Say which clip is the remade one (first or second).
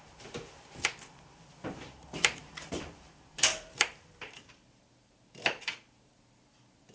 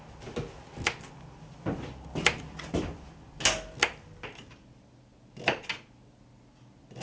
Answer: first